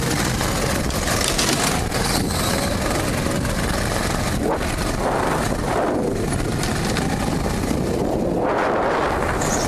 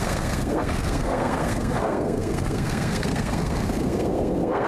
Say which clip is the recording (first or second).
first